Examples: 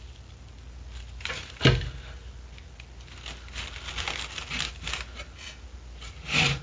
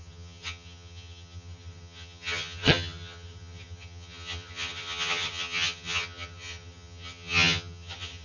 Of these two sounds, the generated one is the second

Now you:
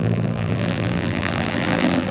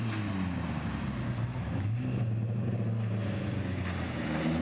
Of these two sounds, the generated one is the first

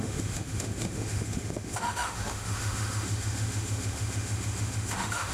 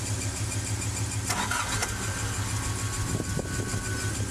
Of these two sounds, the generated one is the first